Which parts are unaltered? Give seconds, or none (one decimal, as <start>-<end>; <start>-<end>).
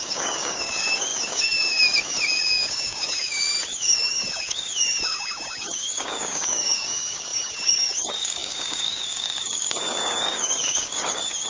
none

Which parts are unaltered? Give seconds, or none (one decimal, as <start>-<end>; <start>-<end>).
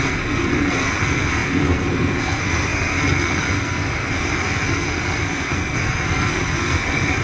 none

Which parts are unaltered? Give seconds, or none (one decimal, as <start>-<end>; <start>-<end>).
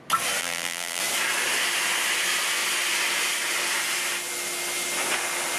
0.0-0.4; 1.0-5.6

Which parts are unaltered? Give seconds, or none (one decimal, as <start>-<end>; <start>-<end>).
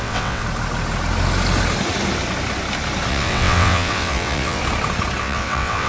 0.4-3.1; 4.6-5.2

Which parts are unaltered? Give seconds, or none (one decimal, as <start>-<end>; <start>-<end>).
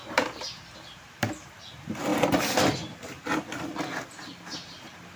1.7-5.2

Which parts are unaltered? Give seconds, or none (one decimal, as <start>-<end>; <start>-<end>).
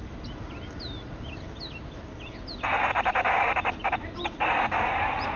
0.0-5.4